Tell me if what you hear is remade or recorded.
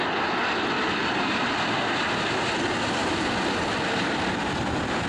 recorded